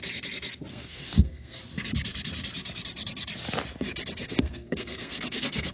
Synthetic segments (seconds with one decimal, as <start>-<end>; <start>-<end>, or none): 0.7-1.6; 4.2-5.7